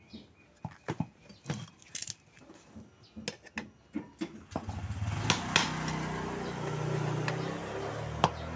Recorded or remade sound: recorded